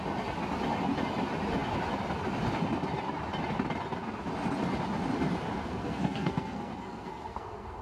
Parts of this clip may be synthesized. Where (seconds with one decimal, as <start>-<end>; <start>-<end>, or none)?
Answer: 5.6-7.8